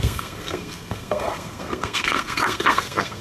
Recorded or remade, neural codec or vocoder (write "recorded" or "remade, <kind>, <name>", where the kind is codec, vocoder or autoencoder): remade, codec, SNAC